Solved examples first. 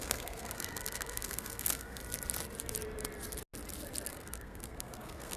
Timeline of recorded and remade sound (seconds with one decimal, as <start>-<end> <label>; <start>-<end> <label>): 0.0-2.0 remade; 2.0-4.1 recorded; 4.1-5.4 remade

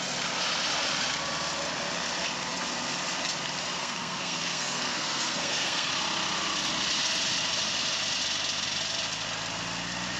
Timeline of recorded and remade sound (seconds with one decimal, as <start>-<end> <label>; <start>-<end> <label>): 0.0-3.8 recorded; 3.8-5.9 remade; 5.9-10.2 recorded

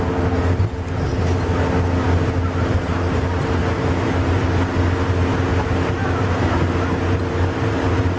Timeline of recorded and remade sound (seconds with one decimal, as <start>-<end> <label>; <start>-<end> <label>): 0.0-8.2 recorded